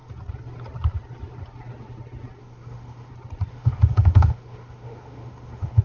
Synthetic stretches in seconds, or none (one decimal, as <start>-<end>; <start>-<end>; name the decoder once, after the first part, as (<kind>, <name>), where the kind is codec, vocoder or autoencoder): 2.4-3.1 (autoencoder, DAC-VAE); 3.5-5.8